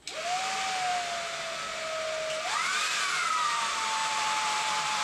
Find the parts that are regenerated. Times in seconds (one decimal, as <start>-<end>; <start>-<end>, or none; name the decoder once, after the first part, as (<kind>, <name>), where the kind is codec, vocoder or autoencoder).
4.0-5.0 (vocoder, BigVGAN v2)